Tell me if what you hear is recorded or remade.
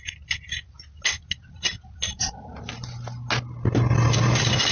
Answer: recorded